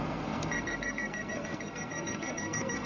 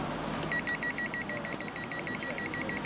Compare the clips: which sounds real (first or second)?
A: second